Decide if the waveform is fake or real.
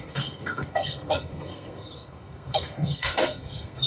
fake